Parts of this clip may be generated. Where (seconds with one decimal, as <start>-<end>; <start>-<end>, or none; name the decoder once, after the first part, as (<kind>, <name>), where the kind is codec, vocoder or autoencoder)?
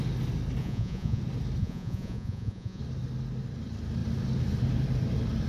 0.6-1.2 (vocoder, Vocos); 1.6-2.8